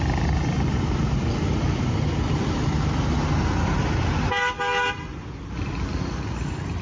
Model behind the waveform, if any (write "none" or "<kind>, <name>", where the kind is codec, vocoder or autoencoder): none